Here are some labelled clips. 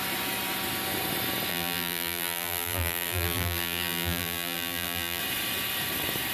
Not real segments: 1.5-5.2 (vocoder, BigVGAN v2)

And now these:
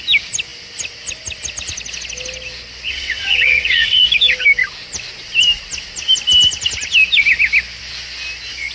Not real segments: 2.9-4.0 (vocoder, WaveNeXt)

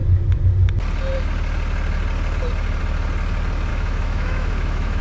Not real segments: 3.7-5.0 (autoencoder, DAC-VAE)

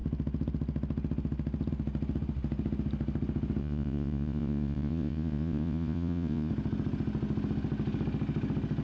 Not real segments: 3.6-6.5 (vocoder, Vocos)

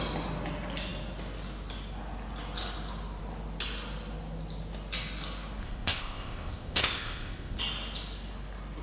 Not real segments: 5.6-7.6 (codec, ZipCodec)